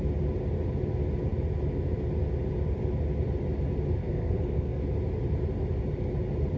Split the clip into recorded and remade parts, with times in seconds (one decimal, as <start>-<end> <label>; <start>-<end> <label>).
0.0-4.0 recorded; 4.0-4.8 remade; 4.8-6.6 recorded